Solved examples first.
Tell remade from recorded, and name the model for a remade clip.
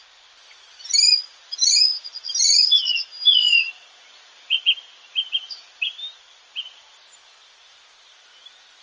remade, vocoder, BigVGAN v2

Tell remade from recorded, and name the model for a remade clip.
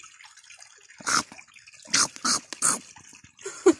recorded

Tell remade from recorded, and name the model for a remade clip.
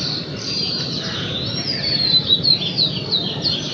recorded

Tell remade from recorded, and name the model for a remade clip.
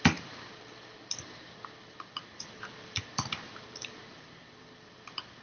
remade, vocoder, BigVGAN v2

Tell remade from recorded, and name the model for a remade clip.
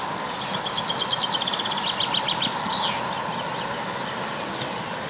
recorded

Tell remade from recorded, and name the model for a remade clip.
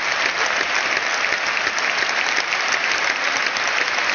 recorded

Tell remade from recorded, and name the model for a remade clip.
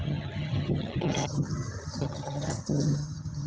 remade, vocoder, HiFi-GAN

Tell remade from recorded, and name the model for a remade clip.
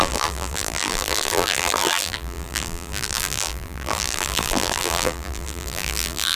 remade, vocoder, BigVGAN v2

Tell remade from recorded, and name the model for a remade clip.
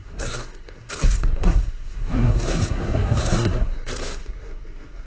remade, codec, SNAC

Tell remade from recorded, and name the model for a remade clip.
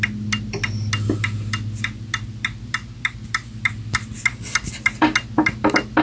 recorded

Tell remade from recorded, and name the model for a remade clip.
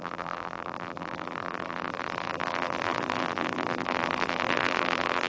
remade, vocoder, BigVGAN v2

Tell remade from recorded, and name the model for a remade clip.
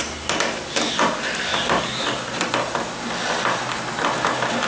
recorded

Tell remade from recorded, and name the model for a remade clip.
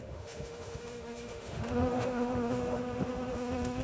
remade, autoencoder, DAC-VAE